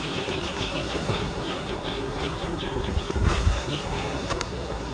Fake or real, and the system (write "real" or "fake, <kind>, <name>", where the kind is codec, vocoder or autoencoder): fake, codec, SNAC